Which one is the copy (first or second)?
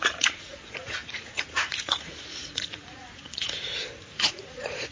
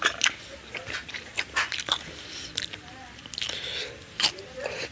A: first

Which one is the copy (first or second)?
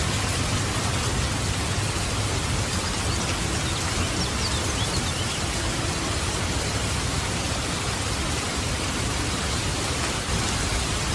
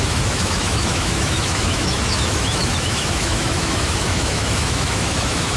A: second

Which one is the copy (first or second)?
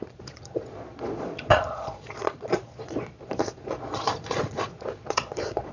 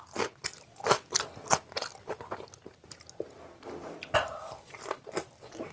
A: first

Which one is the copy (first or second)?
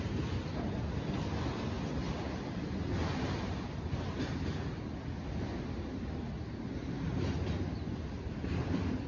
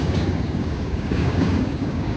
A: second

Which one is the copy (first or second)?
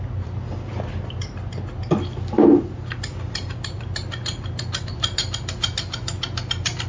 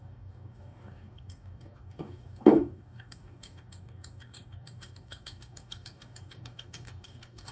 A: second